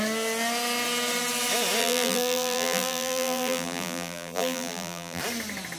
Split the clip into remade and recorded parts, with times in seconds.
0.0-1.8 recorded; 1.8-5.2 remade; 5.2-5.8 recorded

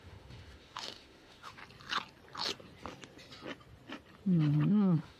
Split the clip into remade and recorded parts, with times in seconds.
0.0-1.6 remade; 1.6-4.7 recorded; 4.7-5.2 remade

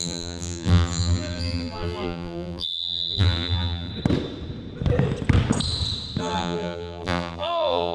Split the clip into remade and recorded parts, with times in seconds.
0.0-3.9 remade; 3.9-6.2 recorded; 6.2-7.9 remade

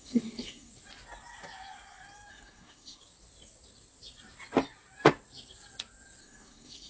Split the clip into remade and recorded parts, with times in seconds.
0.0-0.7 remade; 0.7-2.3 recorded; 2.3-3.0 remade; 3.0-6.2 recorded; 6.2-6.9 remade

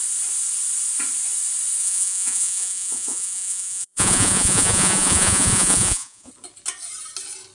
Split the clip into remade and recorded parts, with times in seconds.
0.0-1.8 recorded; 1.8-6.3 remade; 6.3-7.5 recorded

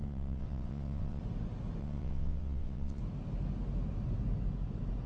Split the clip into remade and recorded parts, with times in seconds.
0.0-1.2 remade; 1.2-1.8 recorded; 1.8-3.0 remade; 3.0-5.1 recorded

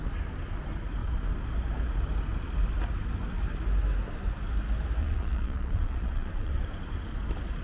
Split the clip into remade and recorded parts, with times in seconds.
0.0-5.0 recorded; 5.0-6.5 remade; 6.5-7.6 recorded